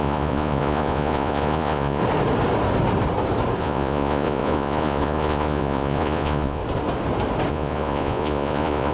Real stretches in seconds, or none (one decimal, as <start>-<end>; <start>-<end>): 2.0-3.6; 6.6-7.5